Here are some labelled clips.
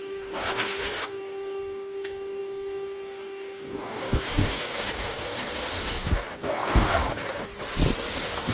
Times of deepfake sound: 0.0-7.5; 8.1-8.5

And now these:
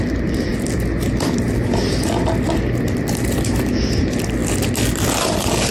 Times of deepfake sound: none

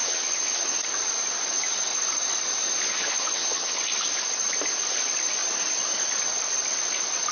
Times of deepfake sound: 0.0-0.8; 2.9-3.8

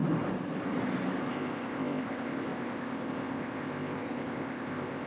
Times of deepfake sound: 1.3-5.1